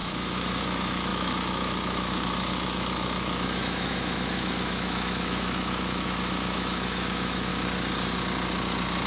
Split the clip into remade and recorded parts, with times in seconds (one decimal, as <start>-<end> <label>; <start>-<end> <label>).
0.0-7.5 remade; 7.5-9.1 recorded